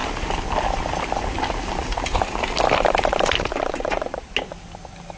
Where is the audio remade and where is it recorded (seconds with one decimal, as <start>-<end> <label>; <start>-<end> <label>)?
0.0-5.2 recorded